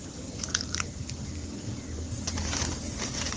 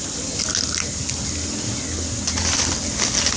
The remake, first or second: first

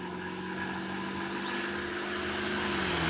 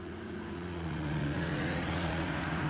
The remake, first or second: second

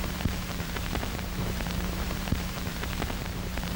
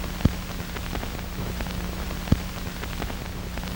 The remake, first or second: first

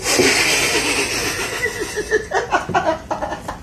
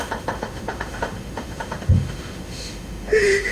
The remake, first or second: second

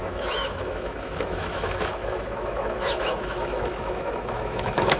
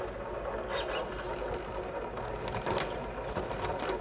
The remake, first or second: first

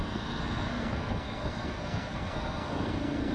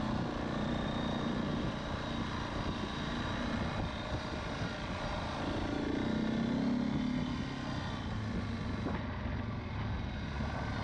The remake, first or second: first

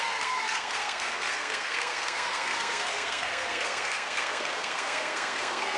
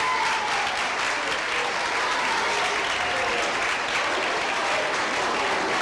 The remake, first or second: first